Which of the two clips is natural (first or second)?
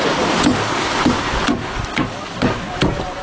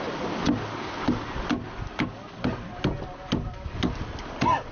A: second